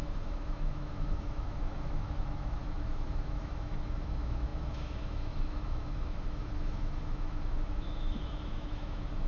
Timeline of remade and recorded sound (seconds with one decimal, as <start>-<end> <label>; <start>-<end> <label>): 0.0-9.3 remade